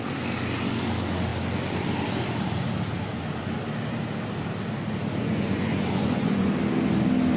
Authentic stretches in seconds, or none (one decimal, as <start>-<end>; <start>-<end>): 0.0-5.2; 6.5-7.4